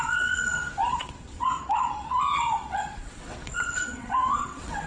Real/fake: fake